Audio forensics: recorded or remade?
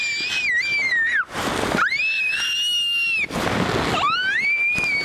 recorded